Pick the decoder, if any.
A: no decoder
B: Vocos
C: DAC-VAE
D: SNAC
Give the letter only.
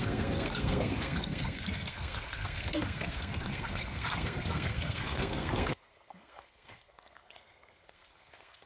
D